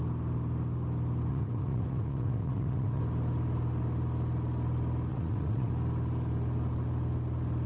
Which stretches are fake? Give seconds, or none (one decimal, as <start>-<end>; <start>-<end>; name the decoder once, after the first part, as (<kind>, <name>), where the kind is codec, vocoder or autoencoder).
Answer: 1.3-3.0 (vocoder, WaveNeXt); 5.1-5.7